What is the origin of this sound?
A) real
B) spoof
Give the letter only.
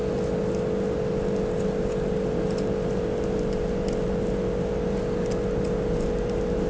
A